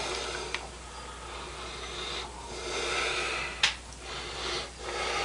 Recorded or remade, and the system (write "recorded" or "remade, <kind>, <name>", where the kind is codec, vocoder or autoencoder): recorded